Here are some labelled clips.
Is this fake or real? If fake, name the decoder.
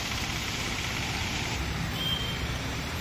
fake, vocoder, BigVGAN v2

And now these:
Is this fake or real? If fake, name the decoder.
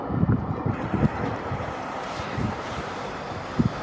fake, vocoder, BigVGAN v2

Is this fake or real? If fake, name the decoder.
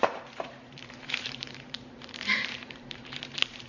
fake, vocoder, BigVGAN v2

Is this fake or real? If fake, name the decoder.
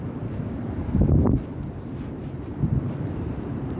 fake, vocoder, BigVGAN v2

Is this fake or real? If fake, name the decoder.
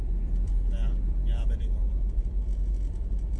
fake, vocoder, BigVGAN v2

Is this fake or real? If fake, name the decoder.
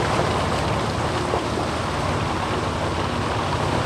real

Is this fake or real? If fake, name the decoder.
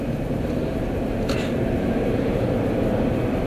fake, vocoder, BigVGAN v2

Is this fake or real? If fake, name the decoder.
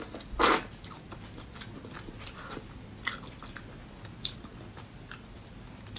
real